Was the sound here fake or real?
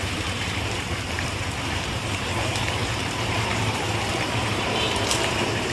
fake